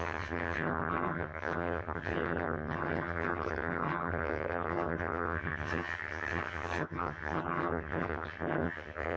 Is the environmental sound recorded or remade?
remade